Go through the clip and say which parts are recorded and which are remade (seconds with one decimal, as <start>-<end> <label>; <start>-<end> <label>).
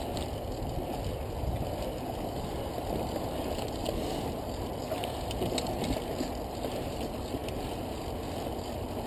0.0-9.1 recorded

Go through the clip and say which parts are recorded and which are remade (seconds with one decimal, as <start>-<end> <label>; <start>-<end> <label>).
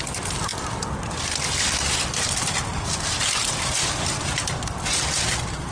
0.0-5.7 recorded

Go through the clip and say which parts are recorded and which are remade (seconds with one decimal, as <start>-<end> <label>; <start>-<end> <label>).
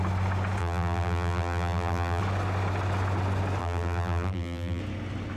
0.0-0.6 recorded; 0.6-2.2 remade; 2.2-3.6 recorded; 3.6-4.8 remade; 4.8-5.4 recorded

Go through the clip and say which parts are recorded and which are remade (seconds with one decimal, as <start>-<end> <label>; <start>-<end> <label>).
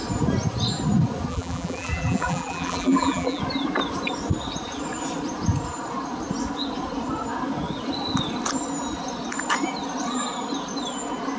0.0-1.3 recorded; 1.3-3.4 remade; 3.4-11.4 recorded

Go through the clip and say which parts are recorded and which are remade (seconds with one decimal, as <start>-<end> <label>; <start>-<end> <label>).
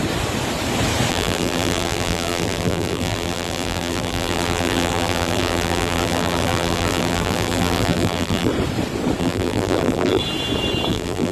0.0-1.1 recorded; 1.1-8.5 remade; 8.5-9.2 recorded; 9.2-10.2 remade; 10.2-10.9 recorded; 10.9-11.3 remade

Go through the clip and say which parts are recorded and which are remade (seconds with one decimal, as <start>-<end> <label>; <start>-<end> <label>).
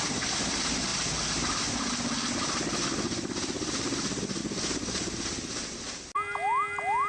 0.0-7.1 recorded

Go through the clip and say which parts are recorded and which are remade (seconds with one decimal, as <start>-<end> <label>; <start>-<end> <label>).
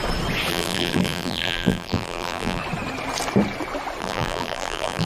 0.0-0.5 recorded; 0.5-2.6 remade; 2.6-4.0 recorded; 4.0-5.1 remade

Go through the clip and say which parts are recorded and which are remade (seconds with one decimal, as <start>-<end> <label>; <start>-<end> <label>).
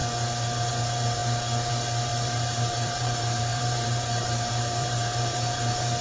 0.0-2.1 recorded; 2.1-6.0 remade